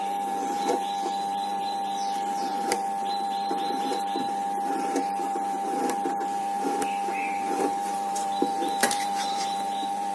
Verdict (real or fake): fake